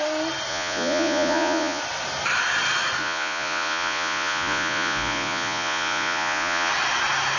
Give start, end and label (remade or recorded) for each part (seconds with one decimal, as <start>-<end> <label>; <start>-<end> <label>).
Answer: 0.0-0.5 recorded; 0.5-1.8 remade; 1.8-3.0 recorded; 3.0-6.7 remade; 6.7-7.4 recorded